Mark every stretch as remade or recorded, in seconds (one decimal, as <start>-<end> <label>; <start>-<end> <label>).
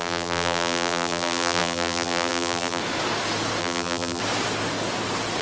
0.0-2.8 remade; 2.8-3.6 recorded; 3.6-4.2 remade; 4.2-5.4 recorded